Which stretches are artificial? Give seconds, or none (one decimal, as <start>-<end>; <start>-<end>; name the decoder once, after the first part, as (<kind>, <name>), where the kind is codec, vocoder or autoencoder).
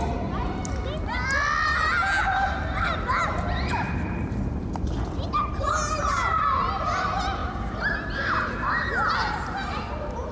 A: none